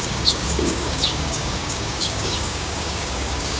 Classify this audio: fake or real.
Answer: fake